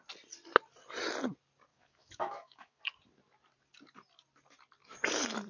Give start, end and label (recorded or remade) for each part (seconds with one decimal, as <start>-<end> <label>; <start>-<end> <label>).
0.0-1.7 recorded; 1.7-2.8 remade; 2.8-5.5 recorded